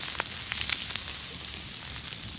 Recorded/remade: recorded